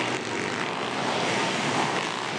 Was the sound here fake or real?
real